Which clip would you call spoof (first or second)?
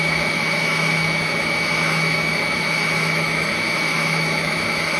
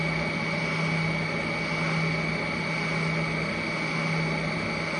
first